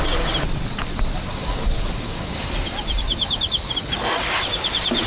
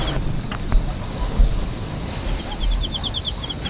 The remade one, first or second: first